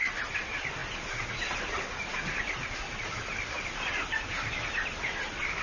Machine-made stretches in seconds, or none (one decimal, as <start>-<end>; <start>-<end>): none